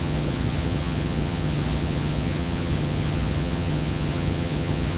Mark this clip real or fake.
fake